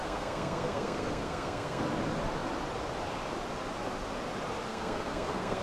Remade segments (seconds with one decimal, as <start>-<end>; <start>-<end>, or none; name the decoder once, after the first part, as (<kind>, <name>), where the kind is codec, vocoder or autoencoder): 0.0-1.8 (codec, SNAC); 4.7-5.6